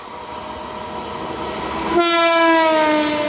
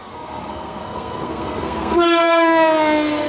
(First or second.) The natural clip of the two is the first